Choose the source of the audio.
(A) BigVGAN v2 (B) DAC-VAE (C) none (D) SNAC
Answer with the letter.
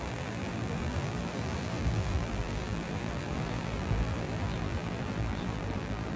A